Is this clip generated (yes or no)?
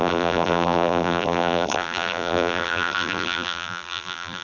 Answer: yes